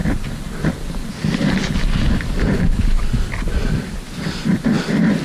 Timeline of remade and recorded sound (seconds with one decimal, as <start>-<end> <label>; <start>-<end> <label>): 0.0-5.2 recorded